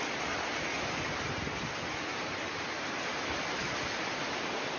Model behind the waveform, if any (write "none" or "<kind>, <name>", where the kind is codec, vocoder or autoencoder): none